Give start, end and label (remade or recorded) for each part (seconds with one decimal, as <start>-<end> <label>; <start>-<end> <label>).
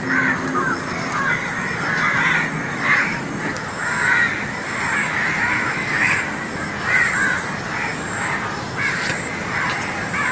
0.0-2.7 recorded; 2.7-3.3 remade; 3.3-5.0 recorded; 5.0-6.2 remade; 6.2-10.3 recorded